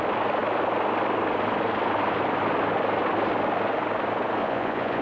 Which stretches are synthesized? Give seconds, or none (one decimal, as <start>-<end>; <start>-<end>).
4.4-5.0

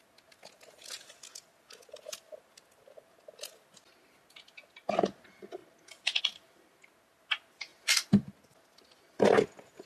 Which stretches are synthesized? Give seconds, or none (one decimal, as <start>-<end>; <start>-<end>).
none

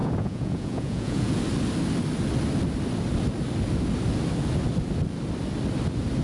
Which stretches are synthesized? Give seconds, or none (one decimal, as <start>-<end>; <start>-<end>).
0.0-1.4

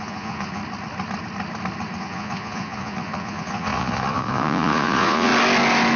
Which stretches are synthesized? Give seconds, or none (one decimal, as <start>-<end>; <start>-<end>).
0.0-0.6; 2.0-5.3

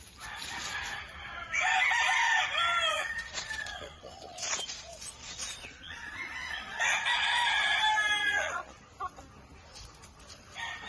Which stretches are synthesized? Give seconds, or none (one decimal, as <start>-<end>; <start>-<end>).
2.9-6.9; 8.2-8.8

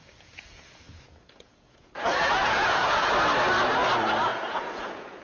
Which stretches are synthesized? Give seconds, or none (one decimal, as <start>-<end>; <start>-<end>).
0.0-3.1; 4.3-5.2

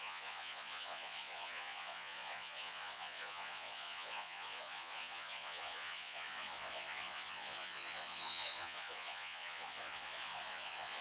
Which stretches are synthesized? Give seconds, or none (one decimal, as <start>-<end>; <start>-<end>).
0.0-11.0

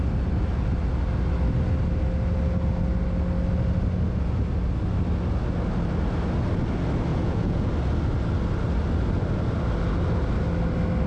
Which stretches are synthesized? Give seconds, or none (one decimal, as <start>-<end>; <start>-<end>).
7.1-7.7